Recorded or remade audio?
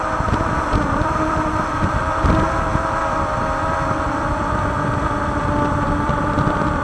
remade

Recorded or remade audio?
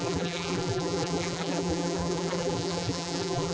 remade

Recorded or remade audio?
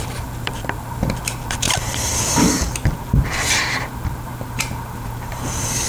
remade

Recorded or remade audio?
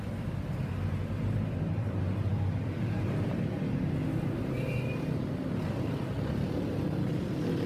recorded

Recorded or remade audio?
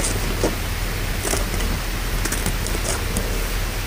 recorded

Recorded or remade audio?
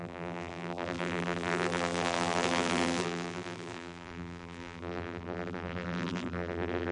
remade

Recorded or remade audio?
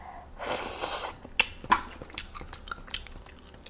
recorded